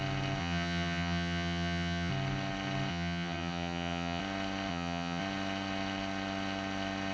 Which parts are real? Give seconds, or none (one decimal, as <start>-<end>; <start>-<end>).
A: 0.0-0.4; 2.1-2.9; 4.2-4.7; 5.2-7.1